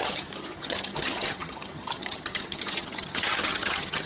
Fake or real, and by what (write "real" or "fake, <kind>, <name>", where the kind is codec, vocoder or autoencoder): fake, vocoder, HiFi-GAN